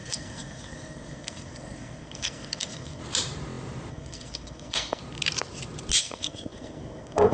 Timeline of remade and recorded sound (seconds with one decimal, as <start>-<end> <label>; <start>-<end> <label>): 0.0-3.0 remade; 3.0-3.9 recorded; 3.9-5.0 remade; 5.0-6.0 recorded; 6.0-7.3 remade